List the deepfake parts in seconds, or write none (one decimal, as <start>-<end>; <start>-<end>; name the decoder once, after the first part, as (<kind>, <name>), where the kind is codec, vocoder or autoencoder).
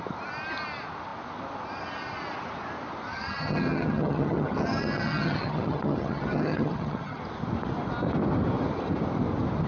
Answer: 3.1-7.2 (vocoder, HiFi-GAN)